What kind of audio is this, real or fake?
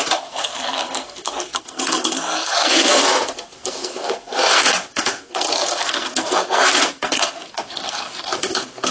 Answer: fake